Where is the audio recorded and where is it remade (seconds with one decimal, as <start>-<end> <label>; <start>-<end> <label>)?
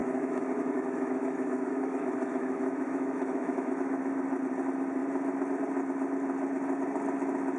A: 0.0-4.1 remade; 4.1-7.6 recorded